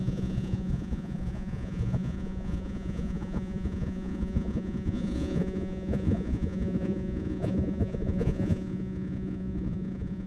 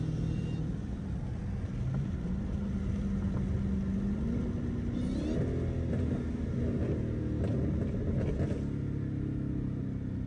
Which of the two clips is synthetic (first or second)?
first